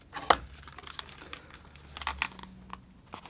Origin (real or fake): real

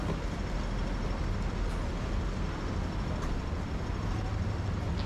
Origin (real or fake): real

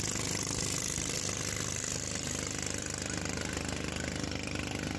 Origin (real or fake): real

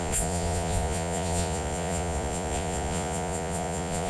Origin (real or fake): fake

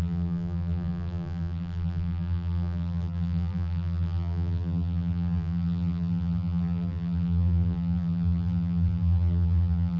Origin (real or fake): fake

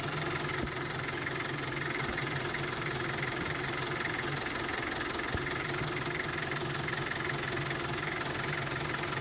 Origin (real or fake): real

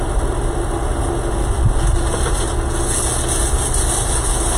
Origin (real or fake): real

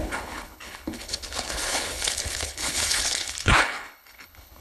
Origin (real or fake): fake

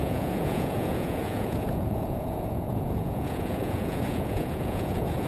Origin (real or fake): fake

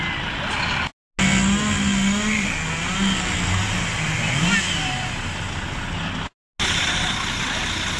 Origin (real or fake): real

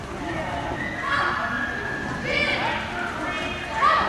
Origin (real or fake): real